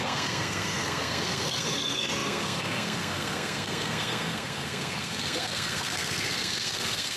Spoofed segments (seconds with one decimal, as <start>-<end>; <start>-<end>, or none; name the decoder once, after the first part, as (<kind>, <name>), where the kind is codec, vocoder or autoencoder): 0.0-7.2 (codec, SNAC)